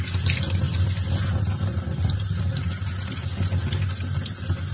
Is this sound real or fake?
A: real